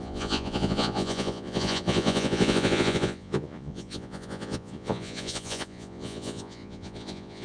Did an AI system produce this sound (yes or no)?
yes